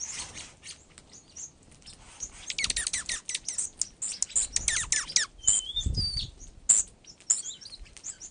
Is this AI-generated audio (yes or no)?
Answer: no